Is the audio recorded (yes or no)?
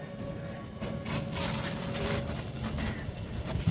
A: yes